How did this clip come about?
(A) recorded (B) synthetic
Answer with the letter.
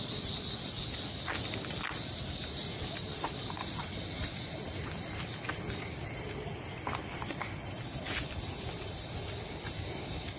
A